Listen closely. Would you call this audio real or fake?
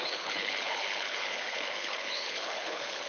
fake